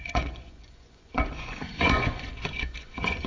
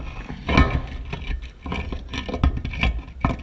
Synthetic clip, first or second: first